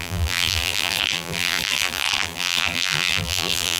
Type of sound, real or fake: fake